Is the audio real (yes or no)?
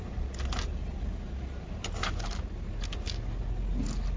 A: yes